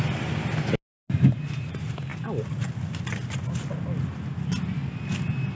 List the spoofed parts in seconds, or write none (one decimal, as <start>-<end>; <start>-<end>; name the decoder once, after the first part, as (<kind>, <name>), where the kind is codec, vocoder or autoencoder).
none